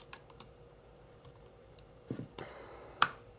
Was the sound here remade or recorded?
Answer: remade